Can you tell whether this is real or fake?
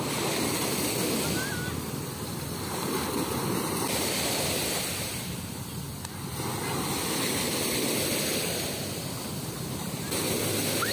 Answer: real